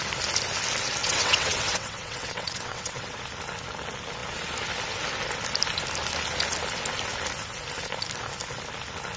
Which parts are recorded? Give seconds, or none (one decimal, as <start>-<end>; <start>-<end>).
0.0-1.0; 3.2-9.2